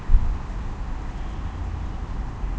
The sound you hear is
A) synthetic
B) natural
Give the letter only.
B